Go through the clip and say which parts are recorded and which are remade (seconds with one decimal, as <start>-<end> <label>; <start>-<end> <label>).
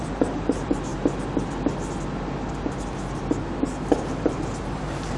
0.0-0.9 remade; 0.9-4.0 recorded; 4.0-5.2 remade